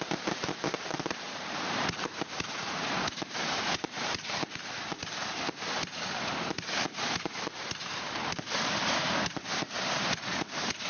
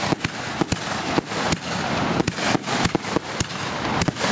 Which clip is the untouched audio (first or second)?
second